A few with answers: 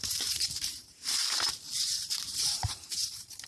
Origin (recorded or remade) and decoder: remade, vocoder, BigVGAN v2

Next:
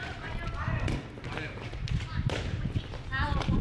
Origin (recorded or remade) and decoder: recorded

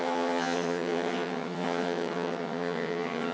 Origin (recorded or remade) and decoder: remade, vocoder, HiFi-GAN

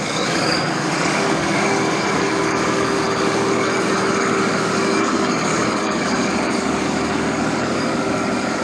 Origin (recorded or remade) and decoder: remade, codec, DAC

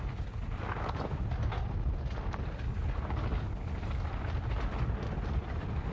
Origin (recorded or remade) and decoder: recorded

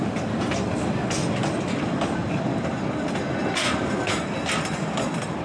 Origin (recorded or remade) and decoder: recorded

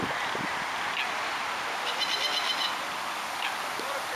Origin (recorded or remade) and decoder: recorded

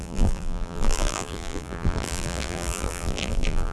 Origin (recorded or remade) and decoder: remade, vocoder, BigVGAN v2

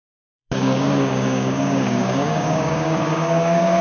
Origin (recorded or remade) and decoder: remade, codec, DAC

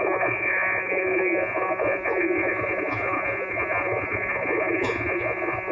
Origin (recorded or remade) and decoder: remade, vocoder, Vocos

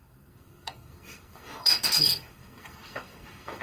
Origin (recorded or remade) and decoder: remade, codec, SNAC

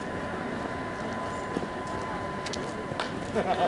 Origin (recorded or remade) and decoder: recorded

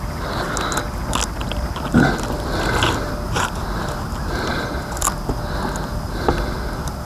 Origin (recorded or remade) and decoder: recorded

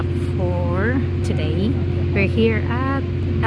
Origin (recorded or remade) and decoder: recorded